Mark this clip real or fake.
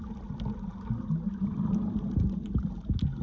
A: real